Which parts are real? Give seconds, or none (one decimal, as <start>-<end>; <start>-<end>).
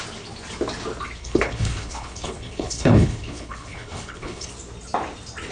0.0-1.2; 4.5-5.5